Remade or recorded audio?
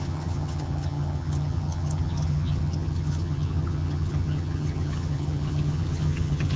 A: remade